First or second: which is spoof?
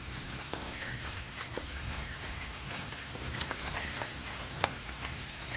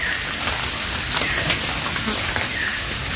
first